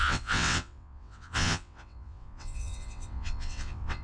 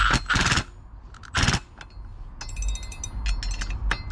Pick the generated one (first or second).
first